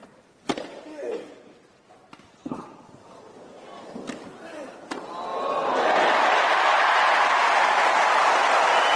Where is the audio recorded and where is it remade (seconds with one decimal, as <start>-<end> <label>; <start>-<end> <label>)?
0.0-9.0 recorded